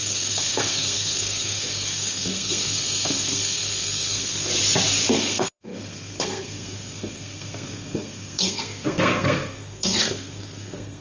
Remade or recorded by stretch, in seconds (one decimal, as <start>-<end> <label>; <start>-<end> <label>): 0.0-4.5 remade; 4.5-5.1 recorded; 5.1-11.0 remade